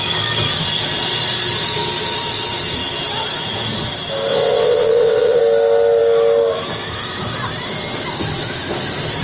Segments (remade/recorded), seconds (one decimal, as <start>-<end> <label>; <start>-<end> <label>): 0.0-4.3 recorded; 4.3-5.4 remade; 5.4-9.2 recorded